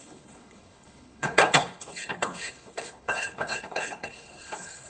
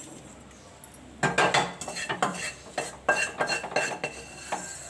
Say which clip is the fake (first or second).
first